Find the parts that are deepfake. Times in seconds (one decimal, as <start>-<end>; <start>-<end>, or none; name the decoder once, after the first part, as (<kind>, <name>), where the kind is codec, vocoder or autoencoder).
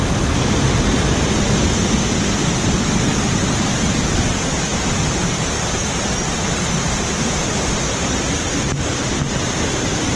4.7-8.6 (vocoder, BigVGAN v2)